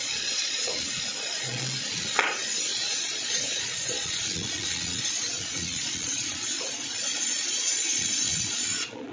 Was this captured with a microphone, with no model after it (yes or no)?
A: no